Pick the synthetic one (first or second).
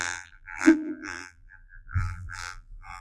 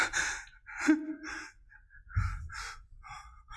first